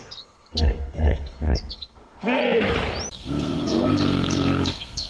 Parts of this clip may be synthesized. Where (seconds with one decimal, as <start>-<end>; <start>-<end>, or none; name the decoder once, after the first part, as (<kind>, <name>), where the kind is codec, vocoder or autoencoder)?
0.0-2.4 (codec, SNAC); 3.1-5.1